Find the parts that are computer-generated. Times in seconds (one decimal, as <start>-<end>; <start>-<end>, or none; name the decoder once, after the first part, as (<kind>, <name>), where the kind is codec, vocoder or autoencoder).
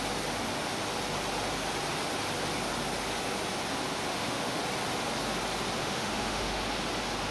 4.1-4.6 (autoencoder, DAC-VAE); 5.8-6.6